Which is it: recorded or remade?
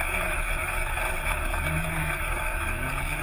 remade